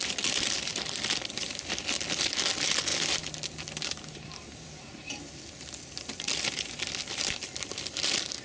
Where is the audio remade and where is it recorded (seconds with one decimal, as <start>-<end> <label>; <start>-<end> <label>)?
0.0-0.7 recorded; 0.7-1.8 remade; 1.8-2.9 recorded; 2.9-5.2 remade; 5.2-8.4 recorded